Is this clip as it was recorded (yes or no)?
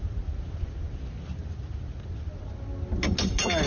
yes